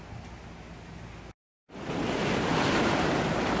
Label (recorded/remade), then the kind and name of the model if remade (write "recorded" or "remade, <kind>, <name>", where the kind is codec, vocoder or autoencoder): recorded